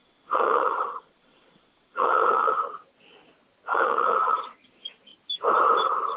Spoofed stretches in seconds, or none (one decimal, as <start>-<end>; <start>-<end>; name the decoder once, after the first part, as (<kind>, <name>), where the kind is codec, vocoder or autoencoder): 0.0-2.6 (vocoder, WaveNeXt); 3.7-4.4